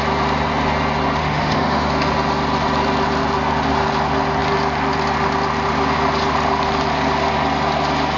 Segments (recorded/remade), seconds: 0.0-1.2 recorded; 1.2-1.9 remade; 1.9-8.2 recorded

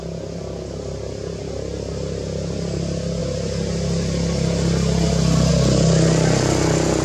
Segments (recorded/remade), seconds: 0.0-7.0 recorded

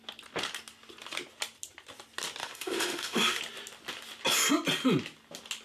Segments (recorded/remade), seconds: 0.0-2.4 recorded; 2.4-3.4 remade; 3.4-5.6 recorded